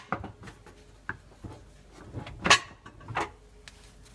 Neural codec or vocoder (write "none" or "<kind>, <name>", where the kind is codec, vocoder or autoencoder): none